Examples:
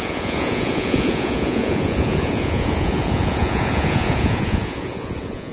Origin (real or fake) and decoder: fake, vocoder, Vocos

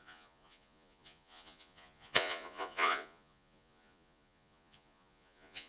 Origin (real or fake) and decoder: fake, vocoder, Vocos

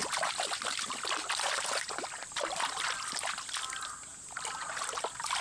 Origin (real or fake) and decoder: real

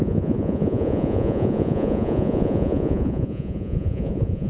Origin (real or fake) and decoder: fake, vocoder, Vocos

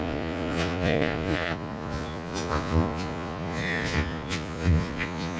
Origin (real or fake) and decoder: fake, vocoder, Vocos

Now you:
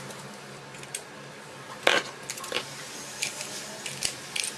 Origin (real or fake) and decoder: real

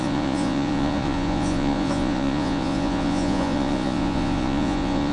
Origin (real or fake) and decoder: fake, vocoder, Vocos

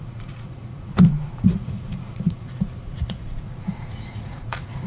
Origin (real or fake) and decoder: fake, vocoder, Vocos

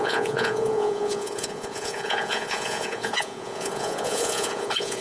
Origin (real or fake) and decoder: fake, vocoder, Vocos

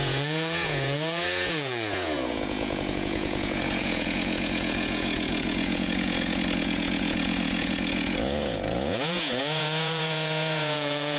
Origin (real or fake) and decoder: fake, vocoder, Vocos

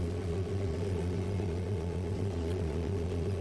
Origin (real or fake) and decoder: fake, vocoder, Vocos